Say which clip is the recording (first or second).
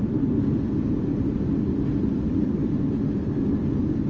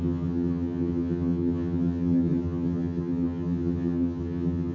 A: first